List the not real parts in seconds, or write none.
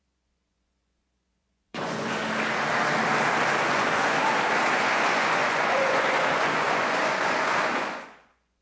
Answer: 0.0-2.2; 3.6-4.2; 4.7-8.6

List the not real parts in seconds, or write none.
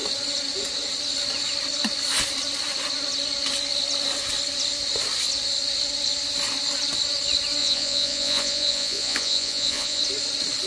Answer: 7.6-10.0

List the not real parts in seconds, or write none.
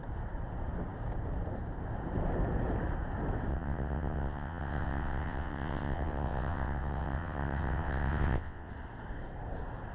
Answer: 3.5-8.7